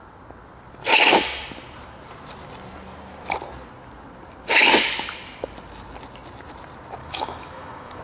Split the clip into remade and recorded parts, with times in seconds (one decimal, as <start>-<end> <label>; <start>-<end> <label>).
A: 0.0-7.0 recorded; 7.0-8.0 remade